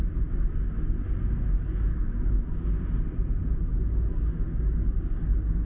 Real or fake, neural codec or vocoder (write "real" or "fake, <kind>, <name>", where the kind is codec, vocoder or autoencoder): real